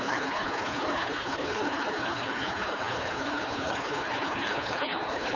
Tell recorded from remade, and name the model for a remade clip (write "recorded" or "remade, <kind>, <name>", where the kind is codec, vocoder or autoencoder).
remade, codec, HILCodec